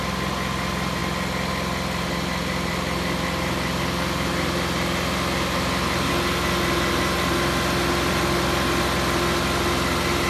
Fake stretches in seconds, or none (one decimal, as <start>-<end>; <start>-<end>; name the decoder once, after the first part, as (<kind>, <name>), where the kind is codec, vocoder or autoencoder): none